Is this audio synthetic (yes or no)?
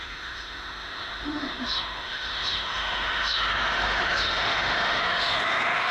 yes